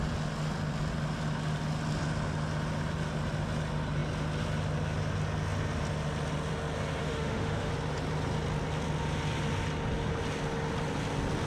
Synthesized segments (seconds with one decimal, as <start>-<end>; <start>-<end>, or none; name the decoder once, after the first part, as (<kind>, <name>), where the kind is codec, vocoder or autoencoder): 7.0-7.7 (autoencoder, DAC-VAE)